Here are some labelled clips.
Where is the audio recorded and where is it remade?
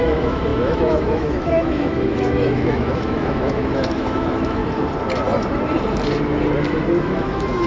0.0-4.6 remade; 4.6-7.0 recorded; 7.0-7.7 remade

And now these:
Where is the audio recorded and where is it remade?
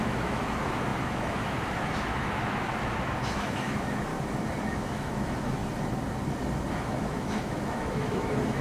0.0-4.1 remade; 4.1-4.6 recorded; 4.6-5.6 remade; 5.6-6.7 recorded; 6.7-8.6 remade